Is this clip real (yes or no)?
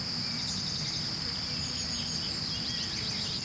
yes